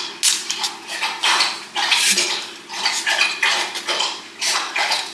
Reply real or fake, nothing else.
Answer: real